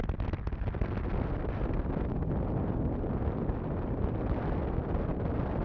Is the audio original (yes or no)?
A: yes